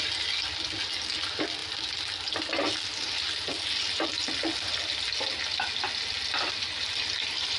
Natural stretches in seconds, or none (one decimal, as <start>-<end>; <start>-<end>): 0.0-7.6